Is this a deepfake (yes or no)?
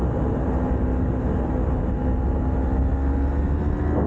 no